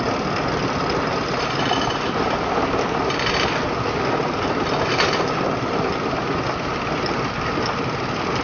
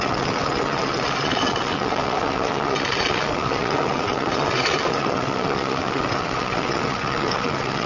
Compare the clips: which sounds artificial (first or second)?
second